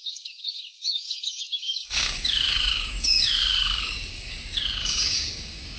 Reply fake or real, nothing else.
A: fake